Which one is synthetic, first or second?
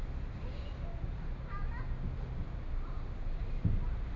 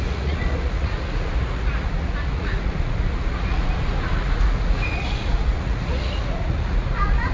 second